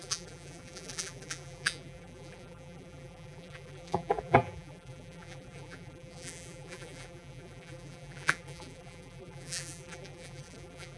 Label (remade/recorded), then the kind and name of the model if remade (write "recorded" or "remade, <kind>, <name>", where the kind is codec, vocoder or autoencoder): remade, vocoder, BigVGAN v2